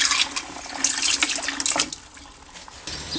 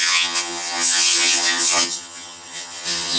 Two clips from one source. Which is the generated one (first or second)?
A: second